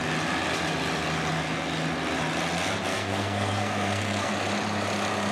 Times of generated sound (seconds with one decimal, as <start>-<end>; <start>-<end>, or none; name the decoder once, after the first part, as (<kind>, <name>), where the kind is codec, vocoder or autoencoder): 2.9-4.3 (codec, SNAC)